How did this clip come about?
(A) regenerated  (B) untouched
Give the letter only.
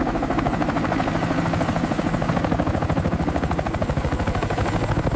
B